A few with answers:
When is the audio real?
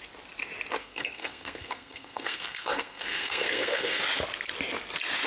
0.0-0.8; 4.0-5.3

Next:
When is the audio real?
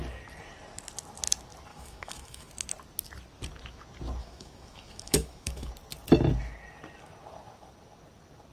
0.0-1.7; 2.5-4.2; 5.7-8.5